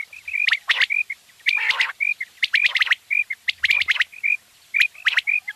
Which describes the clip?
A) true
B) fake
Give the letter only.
A